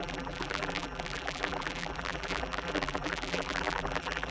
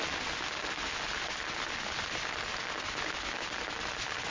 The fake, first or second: first